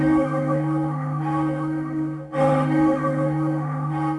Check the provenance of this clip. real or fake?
fake